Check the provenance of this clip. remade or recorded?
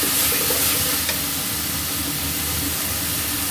recorded